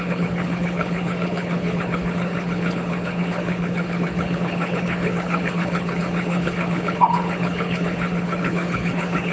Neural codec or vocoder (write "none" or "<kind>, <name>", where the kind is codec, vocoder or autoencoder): codec, HILCodec